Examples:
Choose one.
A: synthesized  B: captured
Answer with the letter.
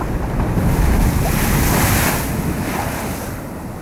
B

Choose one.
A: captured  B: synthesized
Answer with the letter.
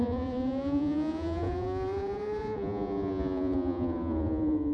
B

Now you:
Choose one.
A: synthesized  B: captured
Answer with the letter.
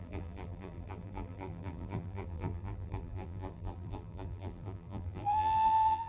A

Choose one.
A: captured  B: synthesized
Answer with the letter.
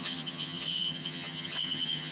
B